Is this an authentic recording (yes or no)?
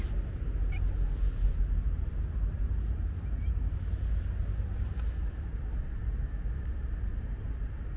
yes